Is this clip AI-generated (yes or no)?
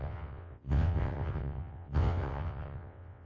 yes